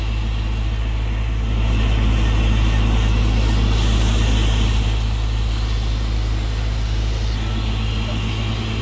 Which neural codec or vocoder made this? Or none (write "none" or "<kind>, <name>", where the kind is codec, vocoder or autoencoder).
none